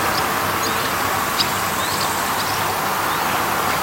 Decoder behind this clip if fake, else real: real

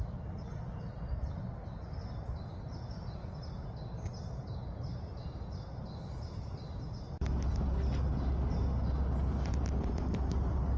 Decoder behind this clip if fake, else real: real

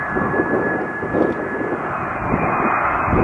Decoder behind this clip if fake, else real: real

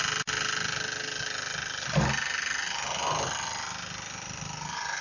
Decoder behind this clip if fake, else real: real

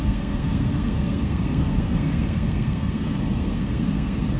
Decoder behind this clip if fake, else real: fake, codec, SNAC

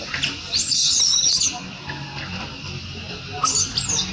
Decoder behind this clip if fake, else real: real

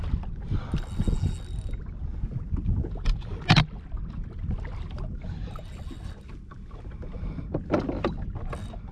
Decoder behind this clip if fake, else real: real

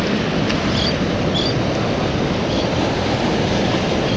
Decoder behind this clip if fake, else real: real